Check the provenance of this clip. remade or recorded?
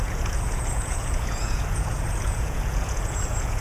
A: remade